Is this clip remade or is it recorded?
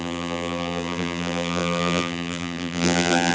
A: remade